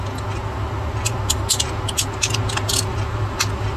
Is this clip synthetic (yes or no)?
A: no